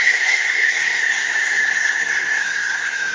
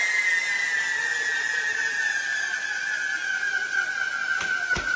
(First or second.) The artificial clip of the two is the first